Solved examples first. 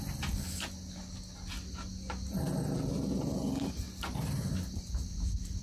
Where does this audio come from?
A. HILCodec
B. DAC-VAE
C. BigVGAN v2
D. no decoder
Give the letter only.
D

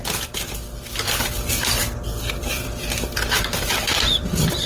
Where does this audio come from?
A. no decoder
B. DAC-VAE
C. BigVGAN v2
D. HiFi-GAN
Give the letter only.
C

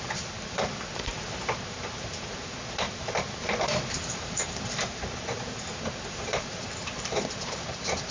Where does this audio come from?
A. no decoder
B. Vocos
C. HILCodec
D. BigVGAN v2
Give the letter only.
D